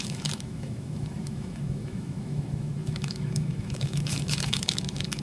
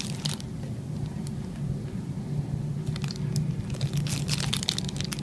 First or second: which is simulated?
first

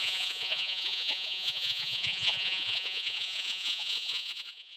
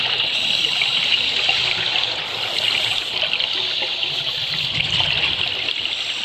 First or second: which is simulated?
first